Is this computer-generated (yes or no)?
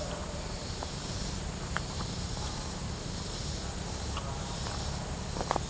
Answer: yes